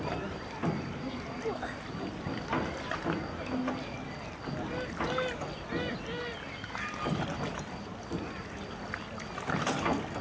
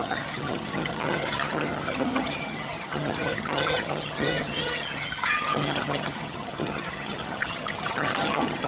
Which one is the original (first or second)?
first